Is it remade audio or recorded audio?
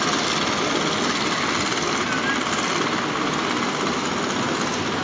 recorded